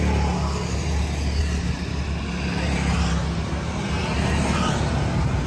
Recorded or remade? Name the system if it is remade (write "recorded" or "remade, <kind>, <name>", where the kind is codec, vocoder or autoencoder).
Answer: recorded